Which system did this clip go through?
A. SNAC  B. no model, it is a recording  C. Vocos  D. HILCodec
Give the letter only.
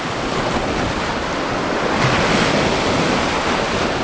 B